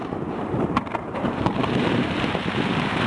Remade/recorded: remade